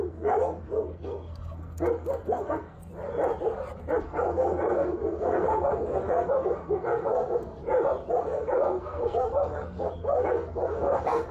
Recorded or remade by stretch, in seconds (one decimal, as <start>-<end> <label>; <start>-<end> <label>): 0.0-2.9 remade; 2.9-4.0 recorded; 4.0-7.6 remade; 7.6-8.2 recorded; 8.2-11.3 remade